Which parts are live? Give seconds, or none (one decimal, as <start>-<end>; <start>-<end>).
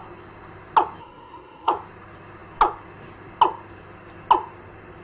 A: 0.0-1.0; 1.7-5.0